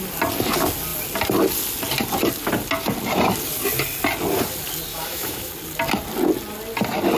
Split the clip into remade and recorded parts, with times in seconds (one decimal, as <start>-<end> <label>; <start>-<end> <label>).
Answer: 0.0-4.9 recorded; 4.9-5.5 remade; 5.5-7.2 recorded